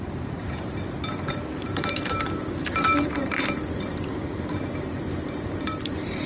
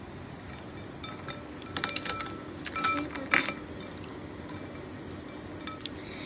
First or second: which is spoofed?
first